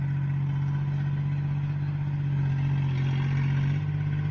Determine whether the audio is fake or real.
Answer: real